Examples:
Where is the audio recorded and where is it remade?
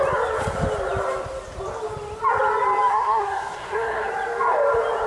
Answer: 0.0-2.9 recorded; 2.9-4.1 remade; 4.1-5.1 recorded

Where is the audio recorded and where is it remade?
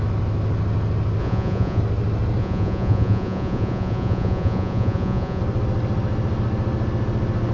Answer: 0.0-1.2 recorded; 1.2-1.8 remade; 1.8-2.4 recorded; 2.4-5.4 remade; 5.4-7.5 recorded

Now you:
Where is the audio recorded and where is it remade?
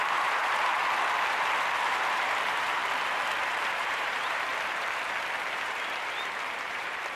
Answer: 0.0-0.4 remade; 0.4-1.8 recorded; 1.8-2.8 remade; 2.8-3.4 recorded; 3.4-4.5 remade; 4.5-5.5 recorded; 5.5-7.2 remade